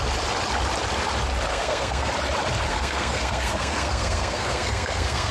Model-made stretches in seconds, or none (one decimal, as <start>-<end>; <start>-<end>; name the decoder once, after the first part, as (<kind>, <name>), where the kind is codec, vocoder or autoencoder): 1.5-2.1 (codec, SNAC); 2.7-5.3